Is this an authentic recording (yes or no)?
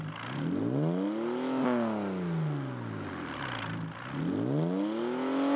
yes